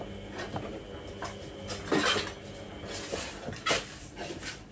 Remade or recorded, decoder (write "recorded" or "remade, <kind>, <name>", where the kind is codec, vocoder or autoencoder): recorded